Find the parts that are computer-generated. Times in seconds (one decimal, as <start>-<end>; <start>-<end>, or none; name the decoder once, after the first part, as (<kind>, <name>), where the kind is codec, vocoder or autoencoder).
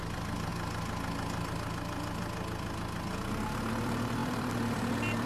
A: 0.0-0.5 (vocoder, BigVGAN v2); 3.7-5.3